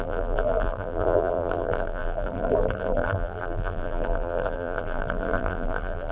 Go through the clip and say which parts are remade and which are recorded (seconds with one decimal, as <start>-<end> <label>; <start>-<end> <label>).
0.0-6.1 remade

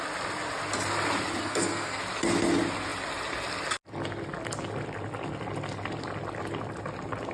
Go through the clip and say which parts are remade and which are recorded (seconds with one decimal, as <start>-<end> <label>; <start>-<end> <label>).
0.0-1.4 recorded; 1.4-2.0 remade; 2.0-7.3 recorded

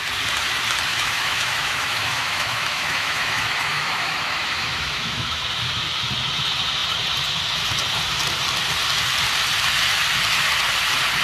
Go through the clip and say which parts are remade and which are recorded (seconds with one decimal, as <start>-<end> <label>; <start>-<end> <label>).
0.0-0.9 recorded; 0.9-5.4 remade; 5.4-11.2 recorded

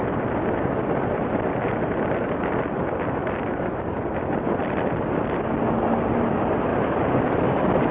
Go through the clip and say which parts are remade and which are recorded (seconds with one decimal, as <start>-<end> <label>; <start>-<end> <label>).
0.0-7.9 recorded

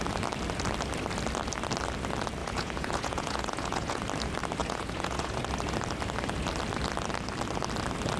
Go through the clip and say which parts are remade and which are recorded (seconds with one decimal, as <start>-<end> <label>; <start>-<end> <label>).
0.0-2.4 recorded; 2.4-4.0 remade; 4.0-4.6 recorded; 4.6-5.4 remade; 5.4-8.2 recorded

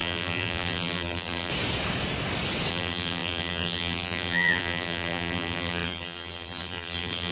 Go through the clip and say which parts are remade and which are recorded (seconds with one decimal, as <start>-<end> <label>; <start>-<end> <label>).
0.0-1.5 remade; 1.5-2.7 recorded; 2.7-7.3 remade

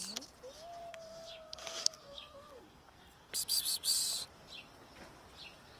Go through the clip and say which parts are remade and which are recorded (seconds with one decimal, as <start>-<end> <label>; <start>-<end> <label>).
0.0-0.9 recorded; 0.9-3.3 remade; 3.3-5.8 recorded